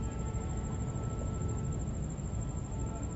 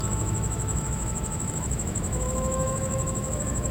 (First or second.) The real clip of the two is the first